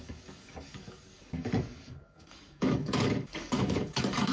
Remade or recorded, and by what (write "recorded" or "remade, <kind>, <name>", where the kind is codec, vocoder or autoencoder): remade, codec, DAC